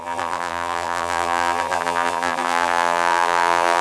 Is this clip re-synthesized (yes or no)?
yes